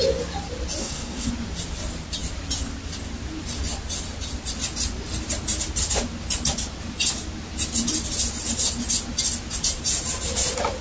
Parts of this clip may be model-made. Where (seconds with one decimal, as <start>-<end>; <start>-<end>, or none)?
0.8-1.3